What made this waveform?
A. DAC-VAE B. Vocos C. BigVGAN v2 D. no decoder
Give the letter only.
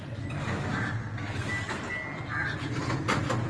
D